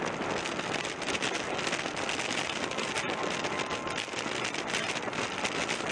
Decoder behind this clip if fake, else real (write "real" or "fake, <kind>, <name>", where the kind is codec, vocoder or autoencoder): real